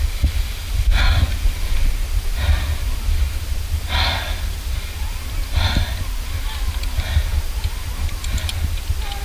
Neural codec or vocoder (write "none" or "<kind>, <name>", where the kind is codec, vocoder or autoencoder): none